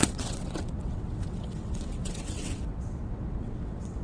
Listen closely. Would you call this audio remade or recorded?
remade